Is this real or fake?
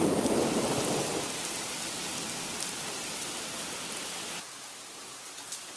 real